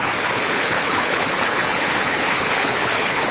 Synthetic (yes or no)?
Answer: yes